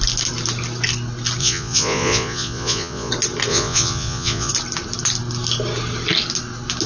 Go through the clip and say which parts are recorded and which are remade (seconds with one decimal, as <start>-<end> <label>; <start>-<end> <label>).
0.0-1.4 recorded; 1.4-3.1 remade; 3.1-3.5 recorded; 3.5-4.5 remade; 4.5-6.9 recorded